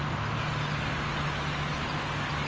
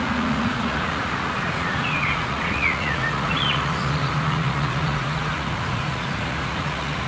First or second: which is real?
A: first